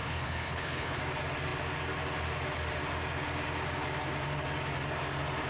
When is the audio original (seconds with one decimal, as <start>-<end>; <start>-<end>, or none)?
1.0-5.5

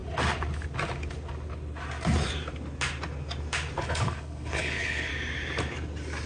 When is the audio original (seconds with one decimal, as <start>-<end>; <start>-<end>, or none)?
0.0-3.8; 5.1-6.3

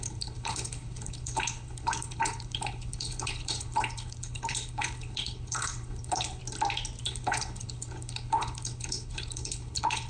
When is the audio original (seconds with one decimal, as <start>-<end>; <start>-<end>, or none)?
6.4-7.0

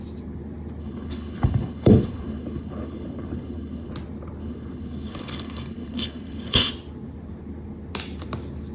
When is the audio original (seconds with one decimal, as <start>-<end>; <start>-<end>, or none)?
0.0-0.8; 3.9-4.4; 6.7-8.7

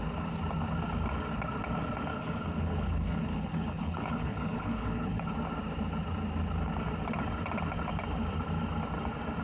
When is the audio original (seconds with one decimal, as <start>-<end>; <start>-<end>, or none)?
0.0-2.1; 5.3-9.4

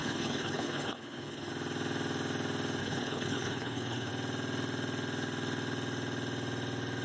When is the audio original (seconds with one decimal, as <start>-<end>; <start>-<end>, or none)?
1.5-2.8; 4.1-7.0

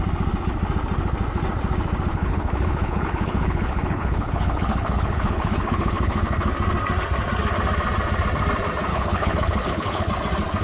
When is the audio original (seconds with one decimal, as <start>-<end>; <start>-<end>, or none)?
0.0-2.1; 6.5-8.9; 10.1-10.6